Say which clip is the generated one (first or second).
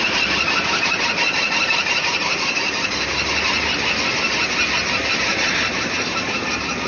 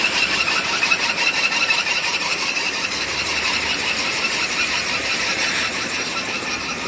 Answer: second